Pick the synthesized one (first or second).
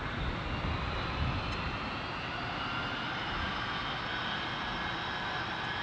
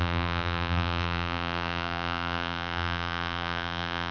second